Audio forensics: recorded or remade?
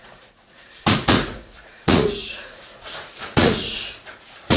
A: remade